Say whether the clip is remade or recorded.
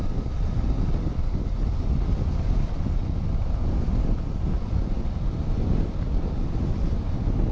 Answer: recorded